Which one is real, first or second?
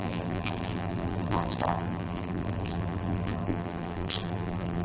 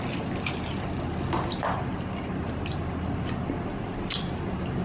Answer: second